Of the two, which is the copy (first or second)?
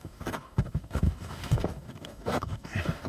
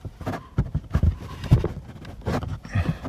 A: first